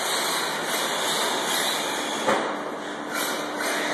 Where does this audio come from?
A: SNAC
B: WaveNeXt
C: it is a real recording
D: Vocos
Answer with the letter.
C